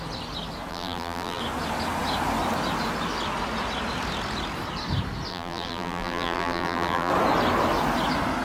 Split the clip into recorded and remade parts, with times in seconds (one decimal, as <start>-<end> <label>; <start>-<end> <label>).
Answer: 0.0-0.7 recorded; 0.7-1.4 remade; 1.4-5.3 recorded; 5.3-7.1 remade; 7.1-8.4 recorded